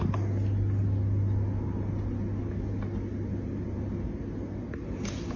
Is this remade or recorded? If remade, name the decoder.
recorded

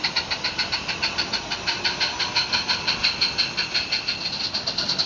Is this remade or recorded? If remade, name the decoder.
recorded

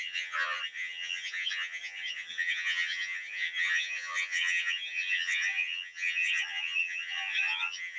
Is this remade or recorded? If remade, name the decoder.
remade, vocoder, HiFi-GAN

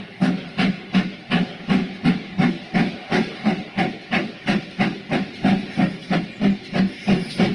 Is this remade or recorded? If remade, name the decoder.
recorded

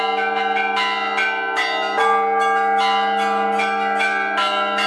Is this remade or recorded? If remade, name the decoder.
recorded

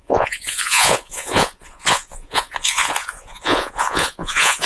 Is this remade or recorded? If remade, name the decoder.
remade, vocoder, Vocos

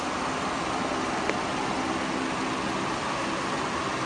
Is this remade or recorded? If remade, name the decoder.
recorded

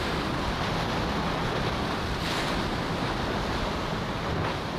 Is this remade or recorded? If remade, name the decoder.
recorded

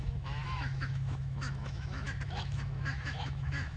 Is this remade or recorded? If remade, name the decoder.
remade, autoencoder, DAC-VAE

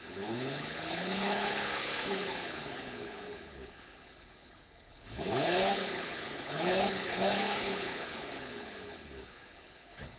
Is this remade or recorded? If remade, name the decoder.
remade, codec, HILCodec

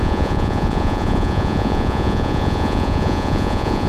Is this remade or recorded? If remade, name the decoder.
remade, vocoder, Vocos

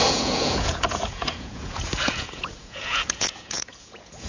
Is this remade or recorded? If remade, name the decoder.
remade, vocoder, Vocos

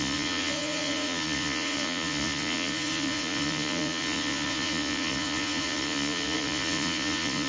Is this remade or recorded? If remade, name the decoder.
remade, vocoder, Vocos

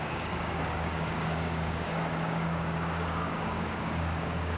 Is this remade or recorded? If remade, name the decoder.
remade, codec, DAC